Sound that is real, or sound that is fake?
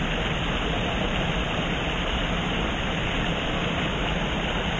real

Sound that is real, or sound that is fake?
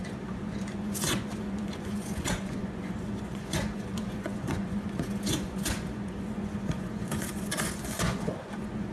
fake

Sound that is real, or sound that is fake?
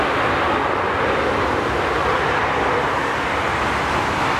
real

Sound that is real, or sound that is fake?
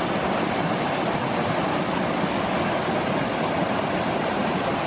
real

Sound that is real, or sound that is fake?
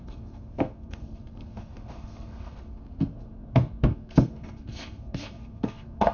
fake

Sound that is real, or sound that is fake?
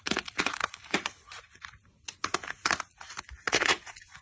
fake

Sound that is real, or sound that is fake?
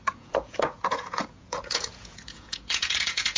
fake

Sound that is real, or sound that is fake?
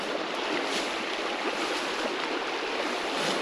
real